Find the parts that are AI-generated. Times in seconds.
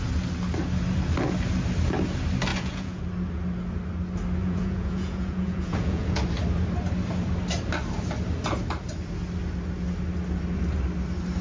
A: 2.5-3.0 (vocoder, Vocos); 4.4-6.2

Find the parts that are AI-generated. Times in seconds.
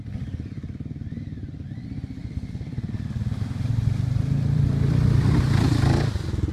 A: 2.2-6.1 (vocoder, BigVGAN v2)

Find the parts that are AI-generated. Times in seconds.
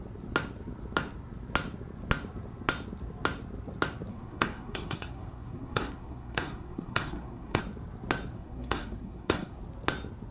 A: 4.1-7.6 (codec, SNAC); 8.3-9.6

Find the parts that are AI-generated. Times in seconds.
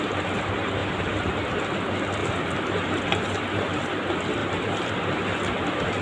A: 0.8-1.6 (vocoder, BigVGAN v2); 2.2-3.8; 4.4-4.9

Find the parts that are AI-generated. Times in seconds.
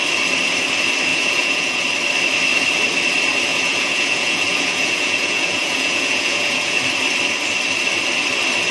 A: 1.1-1.8 (vocoder, Vocos); 3.5-6.8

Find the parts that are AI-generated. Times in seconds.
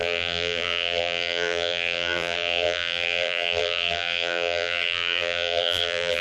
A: 0.0-6.2 (vocoder, BigVGAN v2)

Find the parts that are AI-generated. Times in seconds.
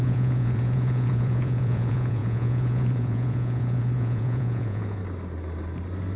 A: 0.0-5.0 (vocoder, Vocos)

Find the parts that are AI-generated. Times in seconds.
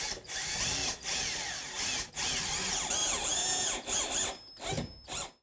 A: 3.0-4.0 (vocoder, Vocos)